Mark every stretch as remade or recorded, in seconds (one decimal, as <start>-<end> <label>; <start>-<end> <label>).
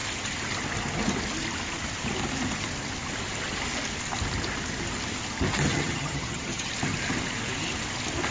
0.0-5.7 recorded; 5.7-6.7 remade; 6.7-8.3 recorded